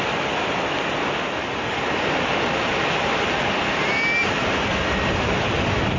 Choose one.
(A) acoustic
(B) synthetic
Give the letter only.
A